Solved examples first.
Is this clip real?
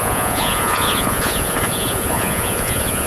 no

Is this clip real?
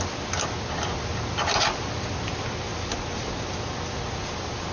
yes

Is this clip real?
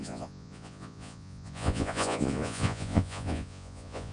no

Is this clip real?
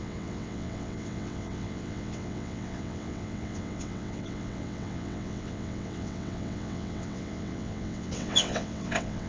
no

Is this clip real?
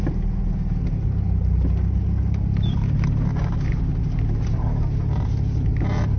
yes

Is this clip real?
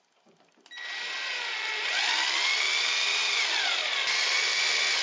yes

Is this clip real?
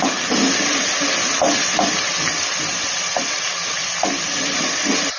yes